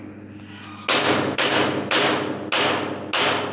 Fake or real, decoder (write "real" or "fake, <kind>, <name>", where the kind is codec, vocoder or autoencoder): real